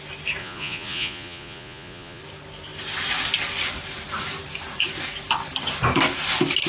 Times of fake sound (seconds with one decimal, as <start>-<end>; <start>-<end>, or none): 0.4-2.2